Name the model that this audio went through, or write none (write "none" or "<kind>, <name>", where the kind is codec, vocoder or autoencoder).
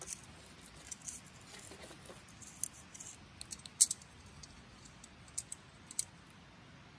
none